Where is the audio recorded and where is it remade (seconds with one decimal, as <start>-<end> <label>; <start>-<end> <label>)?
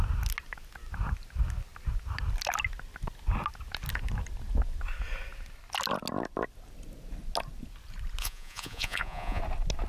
0.0-8.2 recorded; 8.2-9.4 remade; 9.4-9.9 recorded